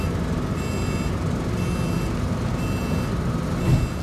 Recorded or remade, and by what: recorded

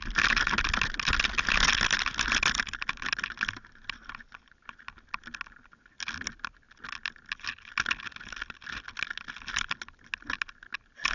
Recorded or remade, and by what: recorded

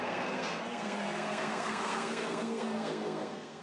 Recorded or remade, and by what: remade, codec, SNAC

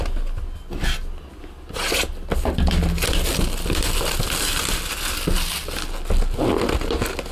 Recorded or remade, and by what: recorded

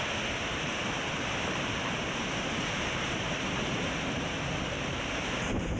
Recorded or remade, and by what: remade, vocoder, BigVGAN v2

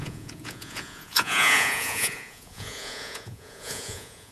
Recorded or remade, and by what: remade, vocoder, Vocos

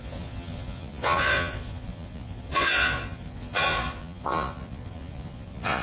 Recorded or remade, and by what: remade, vocoder, Vocos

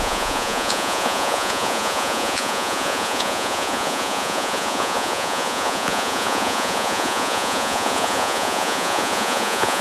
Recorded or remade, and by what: remade, vocoder, Vocos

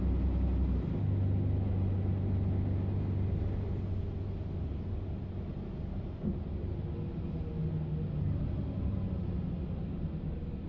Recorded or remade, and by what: recorded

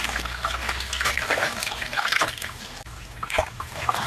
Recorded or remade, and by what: remade, codec, DAC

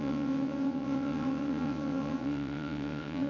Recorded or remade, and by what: remade, vocoder, WaveNeXt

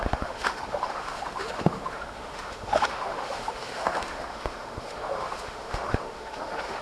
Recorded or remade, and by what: remade, autoencoder, DAC-VAE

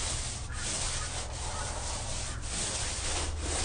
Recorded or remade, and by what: recorded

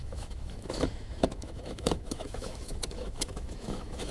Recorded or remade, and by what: remade, autoencoder, DAC-VAE